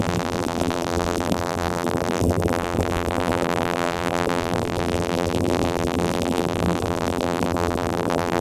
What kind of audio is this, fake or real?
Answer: fake